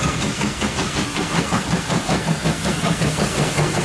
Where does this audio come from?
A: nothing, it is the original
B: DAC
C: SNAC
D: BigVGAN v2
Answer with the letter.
C